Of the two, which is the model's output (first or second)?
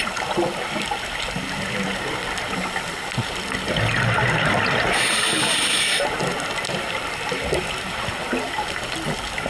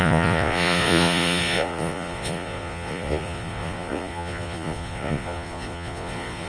second